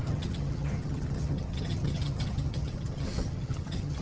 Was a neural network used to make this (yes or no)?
yes